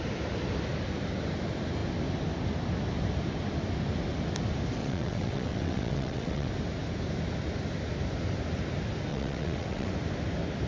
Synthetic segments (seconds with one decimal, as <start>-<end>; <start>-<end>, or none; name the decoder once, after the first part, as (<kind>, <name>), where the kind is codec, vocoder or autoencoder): 4.8-6.5 (vocoder, WaveNeXt); 9.1-9.9